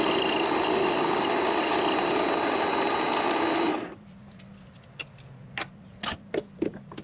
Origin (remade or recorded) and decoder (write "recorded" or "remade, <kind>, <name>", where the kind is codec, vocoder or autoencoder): recorded